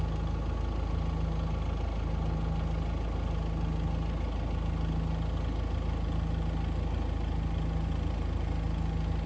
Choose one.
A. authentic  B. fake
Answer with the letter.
A